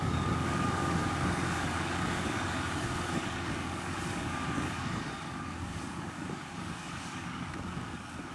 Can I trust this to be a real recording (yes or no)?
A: no